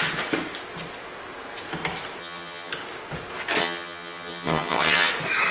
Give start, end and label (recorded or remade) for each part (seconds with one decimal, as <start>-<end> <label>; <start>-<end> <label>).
0.0-2.2 recorded; 2.2-2.7 remade; 2.7-3.6 recorded; 3.6-5.1 remade; 5.1-5.5 recorded